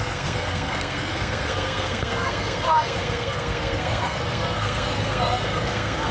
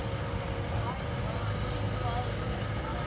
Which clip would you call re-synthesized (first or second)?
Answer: first